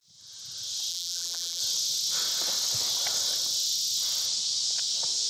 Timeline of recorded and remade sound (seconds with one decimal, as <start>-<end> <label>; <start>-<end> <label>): 0.0-0.9 recorded; 0.9-1.6 remade; 1.6-5.3 recorded